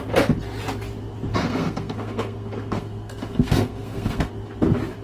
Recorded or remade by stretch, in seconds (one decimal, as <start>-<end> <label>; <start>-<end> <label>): 0.0-1.3 recorded; 1.3-4.3 remade; 4.3-5.0 recorded